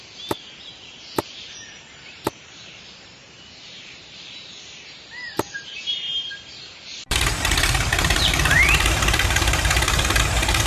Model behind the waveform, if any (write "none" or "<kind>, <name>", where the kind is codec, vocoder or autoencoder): vocoder, BigVGAN v2